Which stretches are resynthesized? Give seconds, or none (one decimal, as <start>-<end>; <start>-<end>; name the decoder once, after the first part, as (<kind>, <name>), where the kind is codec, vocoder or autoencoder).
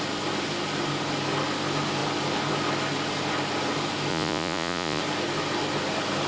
4.1-5.0 (vocoder, Vocos)